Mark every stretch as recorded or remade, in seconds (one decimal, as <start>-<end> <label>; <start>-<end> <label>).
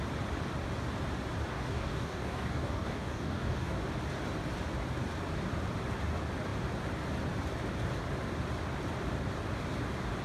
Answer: 0.0-1.5 recorded; 1.5-3.8 remade; 3.8-10.2 recorded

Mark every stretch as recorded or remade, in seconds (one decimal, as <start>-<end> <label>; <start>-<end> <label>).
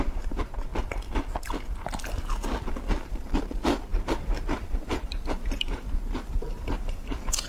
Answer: 0.0-0.7 remade; 0.7-2.9 recorded; 2.9-7.5 remade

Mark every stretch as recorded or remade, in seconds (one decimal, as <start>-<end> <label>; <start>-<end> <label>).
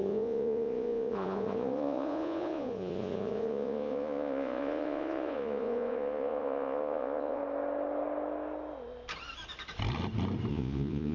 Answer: 0.0-7.4 remade; 7.4-10.5 recorded; 10.5-11.1 remade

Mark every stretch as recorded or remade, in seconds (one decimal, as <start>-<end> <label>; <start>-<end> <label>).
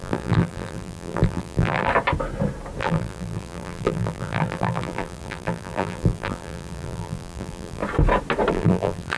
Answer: 0.0-1.9 remade; 1.9-2.8 recorded; 2.8-7.8 remade; 7.8-8.5 recorded; 8.5-9.2 remade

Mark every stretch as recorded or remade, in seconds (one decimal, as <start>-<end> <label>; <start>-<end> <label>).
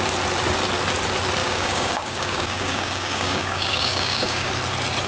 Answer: 0.0-1.4 recorded; 1.4-4.5 remade; 4.5-5.1 recorded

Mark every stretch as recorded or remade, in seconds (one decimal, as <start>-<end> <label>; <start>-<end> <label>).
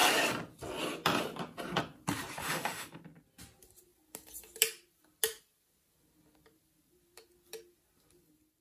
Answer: 0.0-2.4 recorded; 2.4-3.0 remade; 3.0-8.6 recorded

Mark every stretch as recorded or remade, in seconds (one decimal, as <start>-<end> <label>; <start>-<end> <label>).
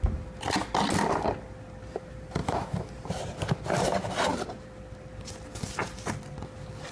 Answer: 0.0-2.4 recorded; 2.4-2.9 remade; 2.9-6.9 recorded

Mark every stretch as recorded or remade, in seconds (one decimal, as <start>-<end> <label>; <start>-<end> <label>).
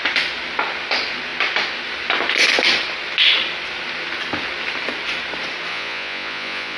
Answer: 0.0-5.7 recorded; 5.7-6.8 remade